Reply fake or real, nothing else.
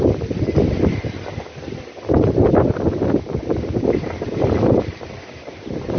real